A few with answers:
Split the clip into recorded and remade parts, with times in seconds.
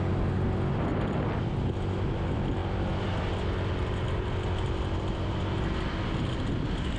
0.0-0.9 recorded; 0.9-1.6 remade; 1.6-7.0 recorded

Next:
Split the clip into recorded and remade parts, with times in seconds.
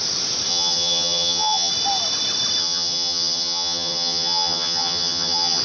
0.0-0.5 recorded; 0.5-1.7 remade; 1.7-2.6 recorded; 2.6-5.6 remade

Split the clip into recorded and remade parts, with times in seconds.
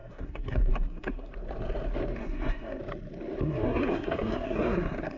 0.0-1.3 remade; 1.3-2.2 recorded; 2.2-2.8 remade; 2.8-3.4 recorded; 3.4-5.2 remade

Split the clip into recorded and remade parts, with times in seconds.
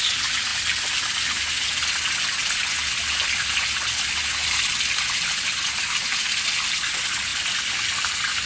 0.0-8.5 recorded